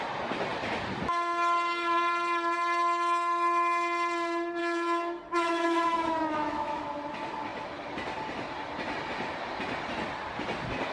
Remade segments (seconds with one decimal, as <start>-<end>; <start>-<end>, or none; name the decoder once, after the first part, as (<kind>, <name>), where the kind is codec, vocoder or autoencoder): 4.6-6.8 (autoencoder, DAC-VAE)